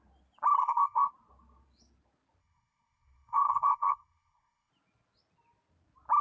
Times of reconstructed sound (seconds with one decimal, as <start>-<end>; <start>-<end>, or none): 0.6-1.1; 2.4-4.7